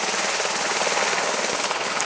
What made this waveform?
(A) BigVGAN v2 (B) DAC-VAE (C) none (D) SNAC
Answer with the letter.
C